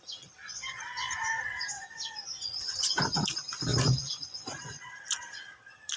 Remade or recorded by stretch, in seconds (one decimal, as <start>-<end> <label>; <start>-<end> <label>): 0.0-0.4 recorded; 0.4-3.2 remade; 3.2-3.7 recorded; 3.7-5.0 remade; 5.0-6.0 recorded